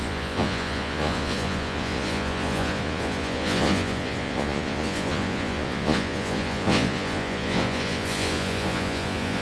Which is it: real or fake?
fake